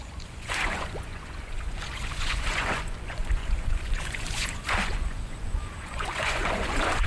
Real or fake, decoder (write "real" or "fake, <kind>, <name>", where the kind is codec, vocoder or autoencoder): fake, vocoder, Vocos